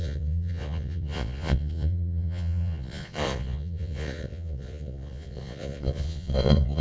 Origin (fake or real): fake